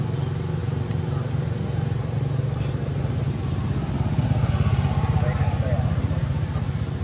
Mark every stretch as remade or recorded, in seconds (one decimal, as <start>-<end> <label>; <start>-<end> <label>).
0.0-7.0 recorded